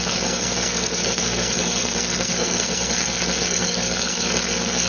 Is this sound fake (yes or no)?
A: yes